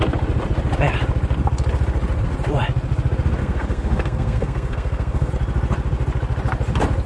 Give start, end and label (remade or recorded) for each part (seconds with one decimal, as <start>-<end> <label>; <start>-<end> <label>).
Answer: 0.0-3.4 recorded; 3.4-5.3 remade; 5.3-7.1 recorded